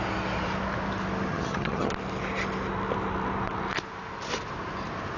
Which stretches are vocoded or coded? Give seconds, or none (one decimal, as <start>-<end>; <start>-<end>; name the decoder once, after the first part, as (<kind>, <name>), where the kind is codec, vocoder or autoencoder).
1.3-1.9 (vocoder, HiFi-GAN)